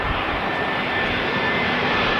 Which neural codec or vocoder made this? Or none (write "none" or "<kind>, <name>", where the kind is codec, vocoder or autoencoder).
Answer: vocoder, BigVGAN v2